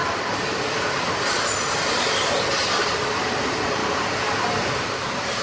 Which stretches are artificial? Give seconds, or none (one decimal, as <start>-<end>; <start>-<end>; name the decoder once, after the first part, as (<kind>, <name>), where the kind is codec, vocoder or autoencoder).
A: none